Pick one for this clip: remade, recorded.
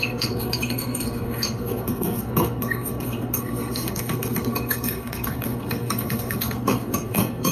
remade